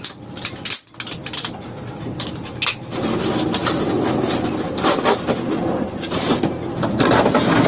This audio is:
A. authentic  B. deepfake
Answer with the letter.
A